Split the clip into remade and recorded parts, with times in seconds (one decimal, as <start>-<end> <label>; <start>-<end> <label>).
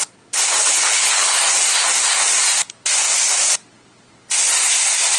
0.0-0.6 recorded; 0.6-1.4 remade; 1.4-5.2 recorded